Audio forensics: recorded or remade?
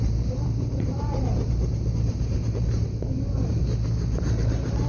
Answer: remade